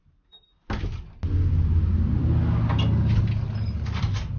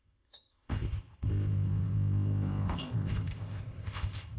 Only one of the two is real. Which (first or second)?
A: first